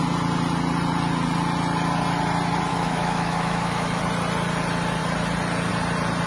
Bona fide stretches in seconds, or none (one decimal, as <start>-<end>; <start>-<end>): 0.0-2.7; 4.0-6.3